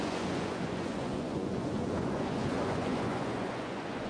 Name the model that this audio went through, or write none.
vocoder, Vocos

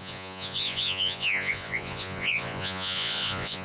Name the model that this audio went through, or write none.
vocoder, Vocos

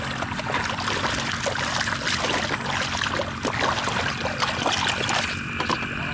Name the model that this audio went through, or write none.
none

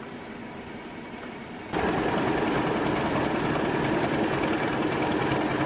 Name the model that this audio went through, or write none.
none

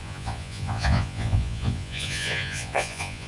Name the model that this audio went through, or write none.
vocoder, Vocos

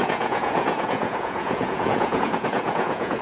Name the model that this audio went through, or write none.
vocoder, Vocos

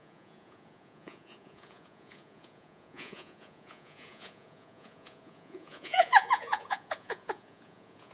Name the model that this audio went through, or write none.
vocoder, Vocos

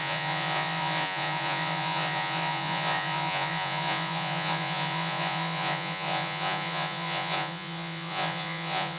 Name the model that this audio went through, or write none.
vocoder, Vocos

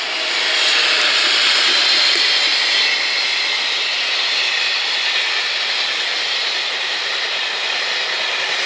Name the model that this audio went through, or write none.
none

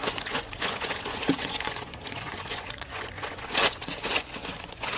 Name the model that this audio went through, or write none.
vocoder, Vocos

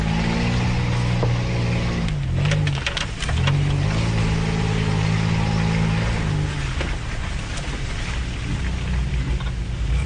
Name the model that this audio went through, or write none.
none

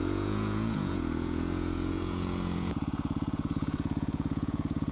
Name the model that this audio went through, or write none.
vocoder, Vocos